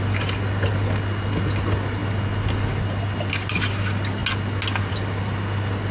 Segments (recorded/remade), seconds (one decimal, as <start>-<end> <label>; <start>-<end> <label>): 0.0-5.9 recorded

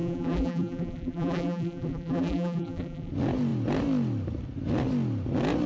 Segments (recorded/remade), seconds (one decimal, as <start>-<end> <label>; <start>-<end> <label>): 0.0-3.1 remade; 3.1-5.7 recorded

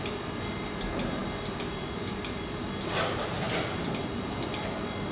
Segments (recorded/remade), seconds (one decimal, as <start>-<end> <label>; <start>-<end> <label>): 0.0-5.1 recorded

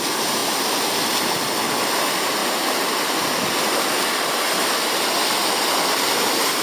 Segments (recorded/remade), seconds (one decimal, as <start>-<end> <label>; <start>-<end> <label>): 0.0-6.6 recorded

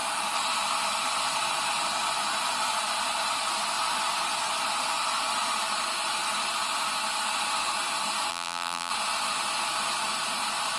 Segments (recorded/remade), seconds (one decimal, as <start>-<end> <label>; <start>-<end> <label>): 0.0-8.3 recorded; 8.3-8.9 remade; 8.9-10.8 recorded

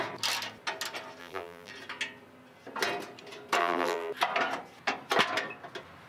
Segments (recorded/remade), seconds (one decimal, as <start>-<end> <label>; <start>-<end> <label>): 0.0-1.2 recorded; 1.2-1.7 remade; 1.7-3.6 recorded; 3.6-4.1 remade; 4.1-6.1 recorded

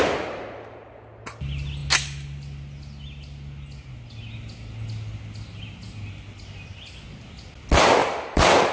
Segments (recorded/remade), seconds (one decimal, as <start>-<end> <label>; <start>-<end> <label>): 0.0-8.0 recorded; 8.0-8.7 remade

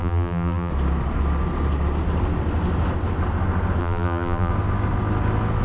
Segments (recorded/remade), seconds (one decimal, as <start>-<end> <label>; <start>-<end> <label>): 0.0-0.7 remade; 0.7-3.8 recorded; 3.8-4.5 remade; 4.5-5.6 recorded